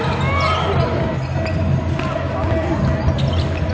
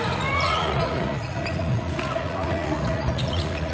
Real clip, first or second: first